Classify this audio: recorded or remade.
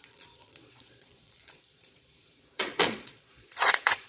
remade